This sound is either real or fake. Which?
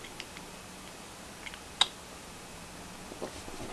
real